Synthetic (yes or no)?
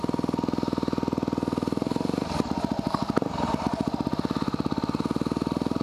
no